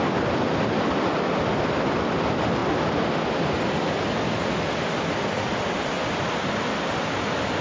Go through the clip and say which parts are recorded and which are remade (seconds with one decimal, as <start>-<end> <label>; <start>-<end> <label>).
0.0-7.6 recorded